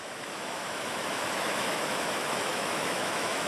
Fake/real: fake